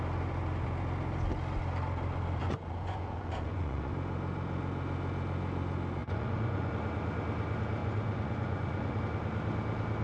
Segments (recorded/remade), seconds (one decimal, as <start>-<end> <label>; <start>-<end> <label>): 0.0-2.4 recorded; 2.4-3.9 remade; 3.9-6.0 recorded; 6.0-6.7 remade; 6.7-7.8 recorded; 7.8-9.0 remade; 9.0-10.0 recorded